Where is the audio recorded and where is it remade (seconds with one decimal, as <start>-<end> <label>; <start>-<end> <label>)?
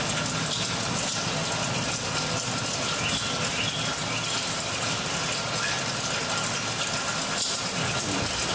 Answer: 0.0-8.5 recorded